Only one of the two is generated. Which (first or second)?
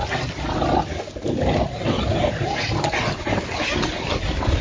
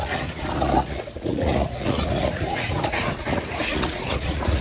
second